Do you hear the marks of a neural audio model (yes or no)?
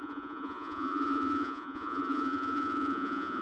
yes